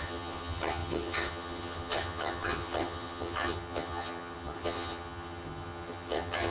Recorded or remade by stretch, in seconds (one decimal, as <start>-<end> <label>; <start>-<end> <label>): 0.0-6.5 remade